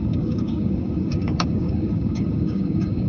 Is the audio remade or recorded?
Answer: remade